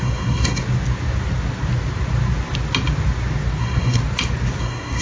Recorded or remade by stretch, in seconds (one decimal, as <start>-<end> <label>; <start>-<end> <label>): 0.0-0.6 remade; 0.6-3.6 recorded; 3.6-4.0 remade; 4.0-4.6 recorded; 4.6-5.0 remade